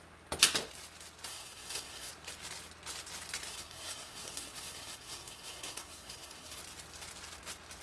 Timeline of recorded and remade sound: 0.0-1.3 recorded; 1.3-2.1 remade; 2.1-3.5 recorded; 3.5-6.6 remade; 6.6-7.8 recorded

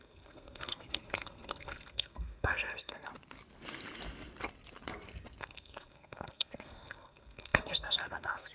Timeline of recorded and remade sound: 0.0-3.1 remade; 3.1-5.4 recorded; 5.4-8.5 remade

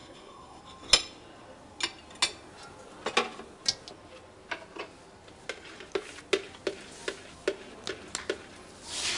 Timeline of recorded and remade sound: 0.0-0.6 remade; 0.6-9.2 recorded

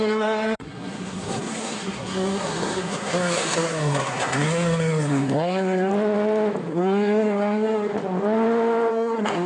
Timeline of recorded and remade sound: 0.0-5.9 remade; 5.9-6.7 recorded; 6.7-7.9 remade; 7.9-8.9 recorded; 8.9-9.5 remade

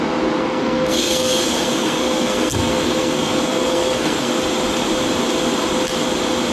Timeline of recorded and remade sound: 0.0-0.4 recorded; 0.4-4.3 remade; 4.3-6.5 recorded

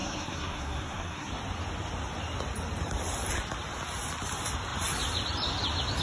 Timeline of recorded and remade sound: 0.0-1.3 remade; 1.3-6.0 recorded

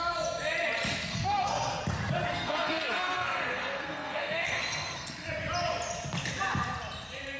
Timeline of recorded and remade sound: 0.0-1.1 recorded; 1.1-1.8 remade; 1.8-2.3 recorded; 2.3-5.3 remade; 5.3-7.4 recorded